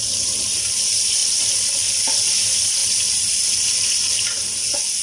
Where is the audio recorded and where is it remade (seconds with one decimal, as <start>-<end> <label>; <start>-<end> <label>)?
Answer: 0.0-5.0 recorded